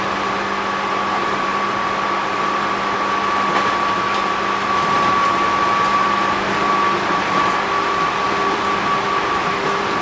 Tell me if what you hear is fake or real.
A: fake